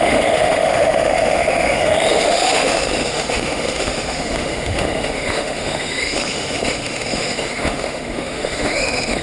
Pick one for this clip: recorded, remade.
remade